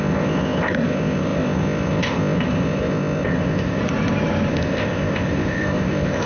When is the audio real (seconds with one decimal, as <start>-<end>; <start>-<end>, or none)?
3.8-4.5

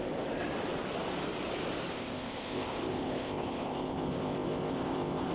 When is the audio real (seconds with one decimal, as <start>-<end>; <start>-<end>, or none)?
0.0-1.9

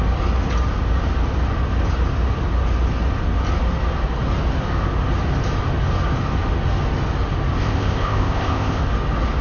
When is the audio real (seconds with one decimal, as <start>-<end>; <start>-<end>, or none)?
0.0-7.6; 8.8-9.4

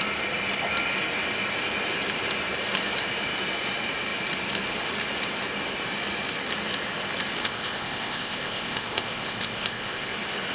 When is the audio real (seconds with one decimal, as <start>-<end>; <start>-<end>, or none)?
0.0-7.4; 10.1-10.5

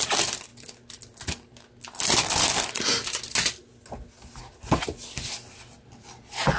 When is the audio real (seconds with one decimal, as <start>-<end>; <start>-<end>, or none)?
0.0-6.6

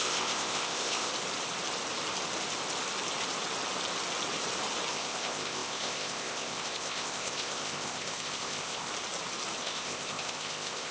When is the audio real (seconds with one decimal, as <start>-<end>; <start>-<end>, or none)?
1.1-4.9; 8.9-9.6

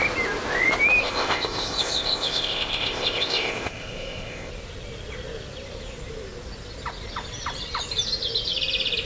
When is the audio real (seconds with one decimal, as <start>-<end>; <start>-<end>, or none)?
0.0-1.0; 4.5-9.1